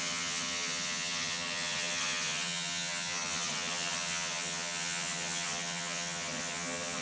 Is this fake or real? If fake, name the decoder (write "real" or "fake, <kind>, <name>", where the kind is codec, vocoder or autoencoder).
fake, vocoder, HiFi-GAN